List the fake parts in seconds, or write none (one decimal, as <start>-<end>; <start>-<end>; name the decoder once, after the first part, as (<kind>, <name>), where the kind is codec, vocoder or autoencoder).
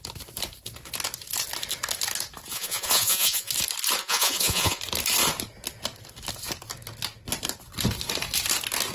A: 2.5-3.5 (vocoder, Vocos); 4.0-4.8